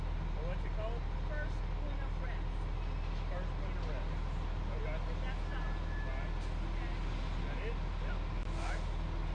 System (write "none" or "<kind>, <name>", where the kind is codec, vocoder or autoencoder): none